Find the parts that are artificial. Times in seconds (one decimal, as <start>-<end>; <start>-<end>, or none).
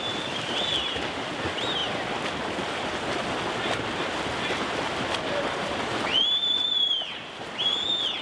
none